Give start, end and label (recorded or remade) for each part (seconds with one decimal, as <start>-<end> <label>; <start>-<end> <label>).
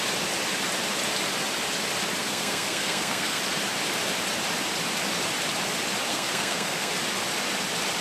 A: 0.0-2.2 recorded; 2.2-3.4 remade; 3.4-6.1 recorded; 6.1-6.9 remade; 6.9-8.0 recorded